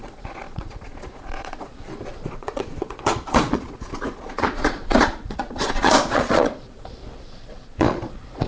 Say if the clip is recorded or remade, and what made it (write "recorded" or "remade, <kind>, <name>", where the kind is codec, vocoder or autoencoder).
remade, vocoder, Vocos